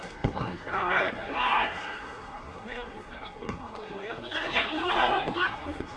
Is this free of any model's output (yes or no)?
no